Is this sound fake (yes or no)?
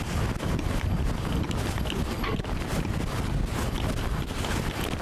no